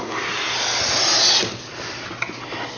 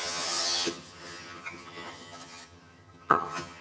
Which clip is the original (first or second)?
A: first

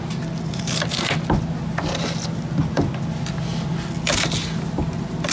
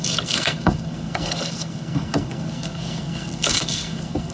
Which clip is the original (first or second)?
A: first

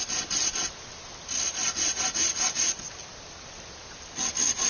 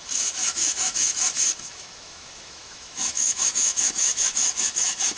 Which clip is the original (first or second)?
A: first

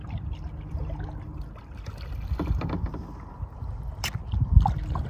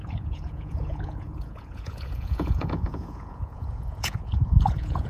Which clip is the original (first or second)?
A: first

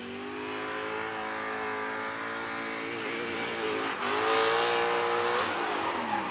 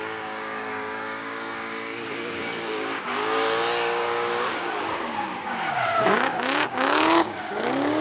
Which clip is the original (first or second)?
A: first